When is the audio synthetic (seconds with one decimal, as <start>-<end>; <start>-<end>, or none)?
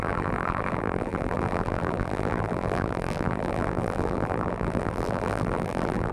0.0-6.1